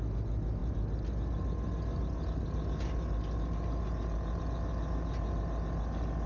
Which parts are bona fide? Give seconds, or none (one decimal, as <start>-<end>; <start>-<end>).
0.0-6.3